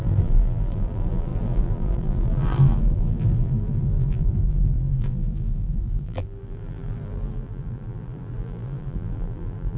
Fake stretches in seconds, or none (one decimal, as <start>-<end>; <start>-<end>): 0.0-9.8